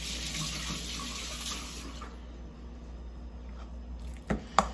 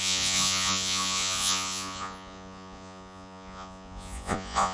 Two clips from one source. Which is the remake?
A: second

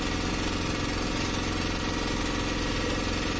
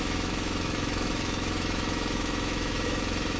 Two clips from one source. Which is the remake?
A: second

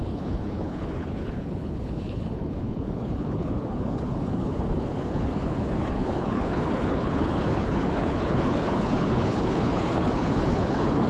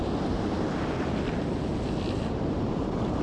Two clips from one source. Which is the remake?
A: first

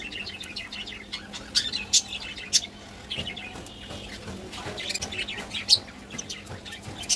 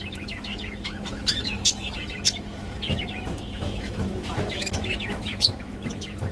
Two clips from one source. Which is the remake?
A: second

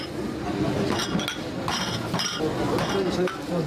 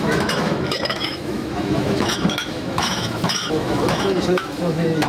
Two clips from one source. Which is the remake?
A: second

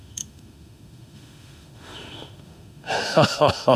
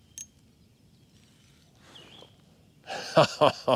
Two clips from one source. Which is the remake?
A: first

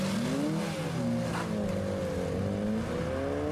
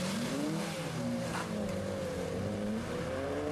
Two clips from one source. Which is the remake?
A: second